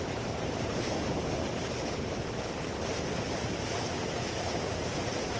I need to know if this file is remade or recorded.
remade